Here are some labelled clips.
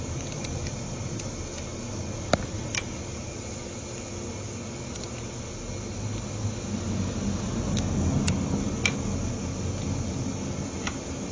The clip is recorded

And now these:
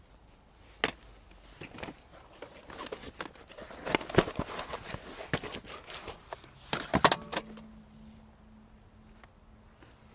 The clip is recorded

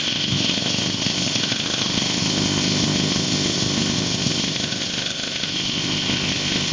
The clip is remade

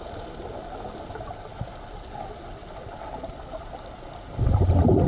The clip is recorded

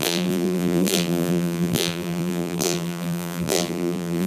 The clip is remade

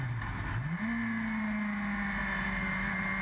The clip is recorded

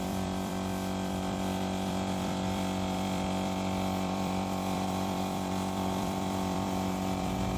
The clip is remade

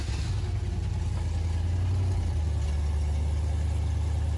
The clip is recorded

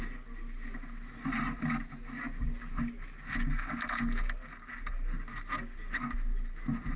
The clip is recorded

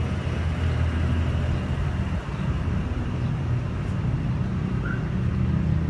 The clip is recorded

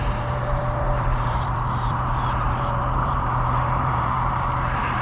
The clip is remade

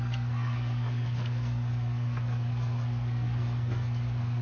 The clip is remade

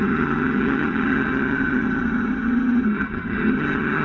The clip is remade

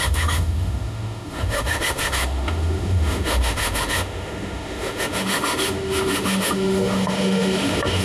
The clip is remade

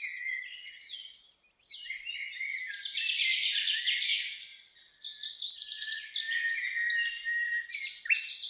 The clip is recorded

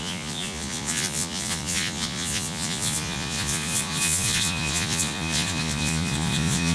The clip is remade